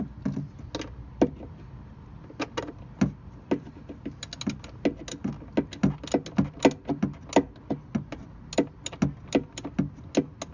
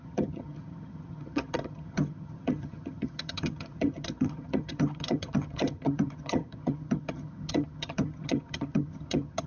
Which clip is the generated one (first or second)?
second